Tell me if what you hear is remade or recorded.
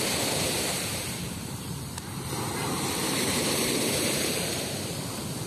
remade